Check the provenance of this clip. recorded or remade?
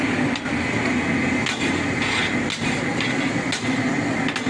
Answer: recorded